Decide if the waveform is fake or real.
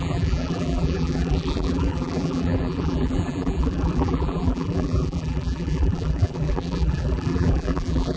fake